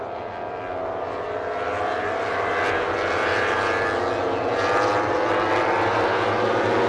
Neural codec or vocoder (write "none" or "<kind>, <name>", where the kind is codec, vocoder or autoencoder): none